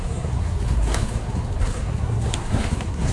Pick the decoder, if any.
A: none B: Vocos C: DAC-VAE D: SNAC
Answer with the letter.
D